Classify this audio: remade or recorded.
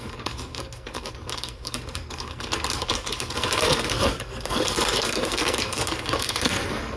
remade